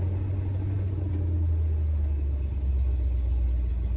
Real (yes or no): yes